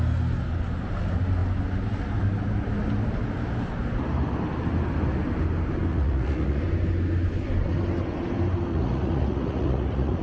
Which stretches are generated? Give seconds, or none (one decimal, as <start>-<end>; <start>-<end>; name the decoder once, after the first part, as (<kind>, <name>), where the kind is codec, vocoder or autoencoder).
5.9-6.6 (vocoder, Vocos); 8.7-10.2